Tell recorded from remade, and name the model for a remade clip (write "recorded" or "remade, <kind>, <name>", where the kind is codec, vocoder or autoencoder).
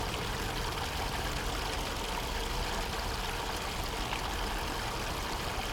recorded